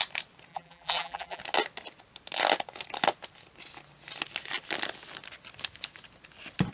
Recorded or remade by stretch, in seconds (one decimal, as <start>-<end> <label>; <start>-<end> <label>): 0.0-0.5 recorded; 0.5-1.4 remade; 1.4-6.7 recorded